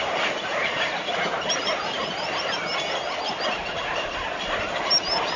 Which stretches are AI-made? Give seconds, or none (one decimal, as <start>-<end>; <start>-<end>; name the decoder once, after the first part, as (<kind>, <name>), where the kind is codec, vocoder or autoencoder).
0.0-2.0 (vocoder, BigVGAN v2)